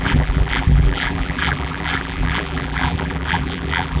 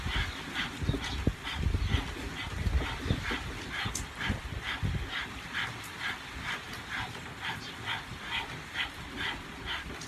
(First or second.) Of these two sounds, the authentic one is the second